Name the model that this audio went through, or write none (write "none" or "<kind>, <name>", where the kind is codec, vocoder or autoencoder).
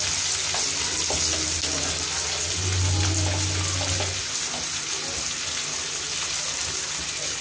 none